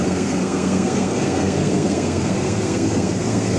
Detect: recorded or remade remade